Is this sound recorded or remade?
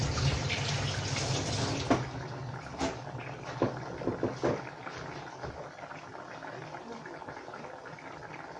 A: recorded